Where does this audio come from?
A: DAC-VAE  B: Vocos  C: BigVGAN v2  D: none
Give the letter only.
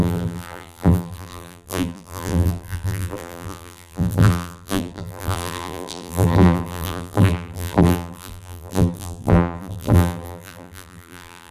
C